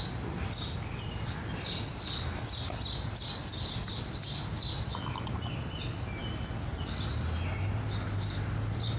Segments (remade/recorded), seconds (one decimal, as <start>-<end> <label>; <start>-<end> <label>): 0.0-9.0 recorded